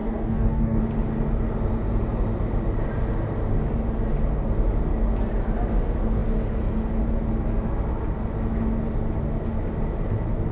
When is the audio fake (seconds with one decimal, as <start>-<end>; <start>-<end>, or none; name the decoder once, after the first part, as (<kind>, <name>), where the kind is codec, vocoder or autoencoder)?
0.0-0.8 (codec, DAC)